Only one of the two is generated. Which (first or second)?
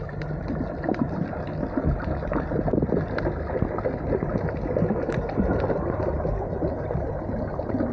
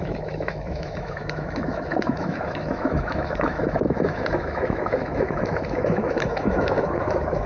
second